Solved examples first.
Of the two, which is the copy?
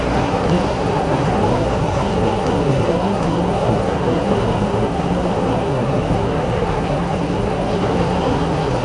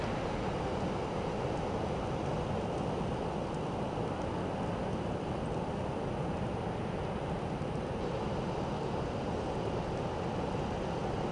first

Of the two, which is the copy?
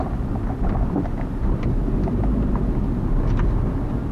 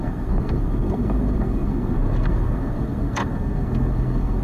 second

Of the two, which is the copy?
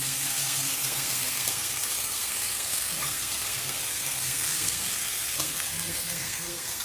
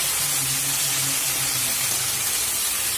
first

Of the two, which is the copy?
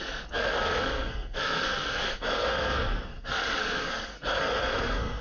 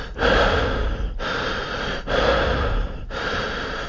first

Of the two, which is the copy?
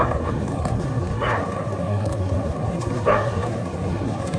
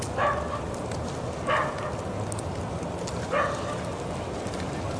first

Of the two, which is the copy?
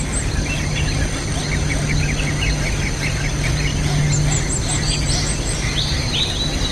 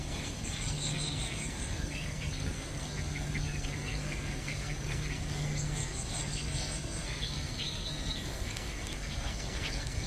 second